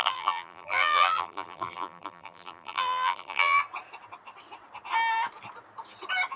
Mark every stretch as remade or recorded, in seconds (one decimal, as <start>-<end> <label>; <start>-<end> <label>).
0.0-3.6 remade; 3.6-6.4 recorded